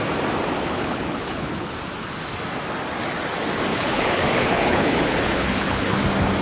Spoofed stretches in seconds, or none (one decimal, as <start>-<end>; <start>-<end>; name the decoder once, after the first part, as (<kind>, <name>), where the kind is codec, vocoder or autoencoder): 0.6-1.7 (codec, HILCodec); 3.7-6.0